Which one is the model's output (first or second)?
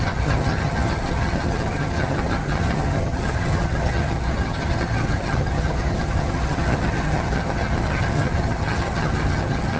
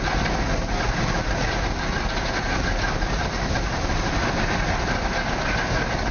first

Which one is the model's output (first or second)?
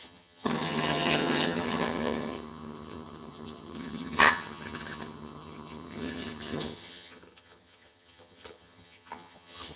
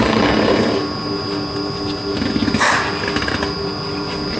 first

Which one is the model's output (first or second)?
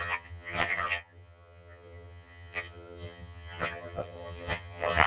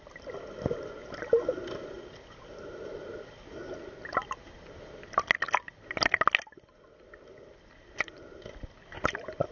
first